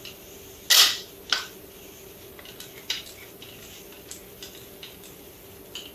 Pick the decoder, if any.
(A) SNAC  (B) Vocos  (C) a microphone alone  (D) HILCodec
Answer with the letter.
C